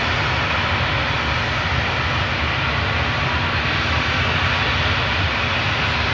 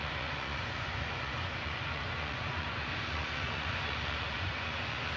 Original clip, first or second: first